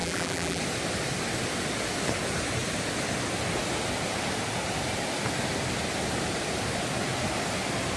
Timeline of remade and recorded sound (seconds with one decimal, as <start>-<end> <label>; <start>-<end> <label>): 0.0-0.6 remade; 0.6-8.0 recorded